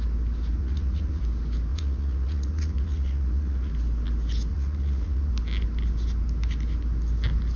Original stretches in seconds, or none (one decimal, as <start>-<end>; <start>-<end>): 0.0-0.6; 1.2-1.7; 3.7-4.5; 5.3-7.6

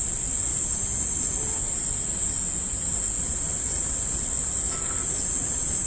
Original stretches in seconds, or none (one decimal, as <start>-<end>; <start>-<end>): 0.0-5.9

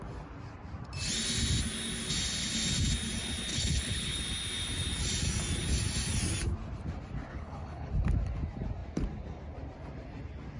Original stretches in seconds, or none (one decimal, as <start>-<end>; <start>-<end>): 0.0-3.5; 4.2-7.3; 7.9-10.6

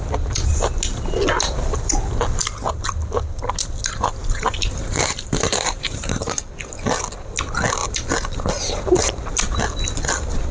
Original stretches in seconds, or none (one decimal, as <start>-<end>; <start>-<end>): 0.0-4.2; 6.4-10.5

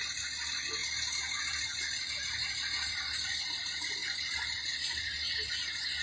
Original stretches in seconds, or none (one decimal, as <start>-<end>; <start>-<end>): 0.0-6.0

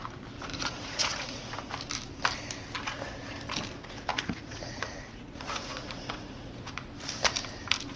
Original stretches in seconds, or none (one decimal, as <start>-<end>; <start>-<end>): 0.0-0.5; 1.5-4.1; 6.9-8.0

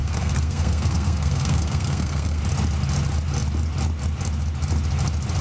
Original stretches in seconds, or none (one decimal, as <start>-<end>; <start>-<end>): 2.4-5.4